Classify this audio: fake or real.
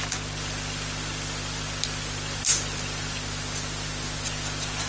real